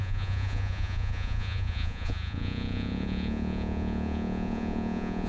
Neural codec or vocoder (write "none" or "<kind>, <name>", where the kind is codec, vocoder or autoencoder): vocoder, Vocos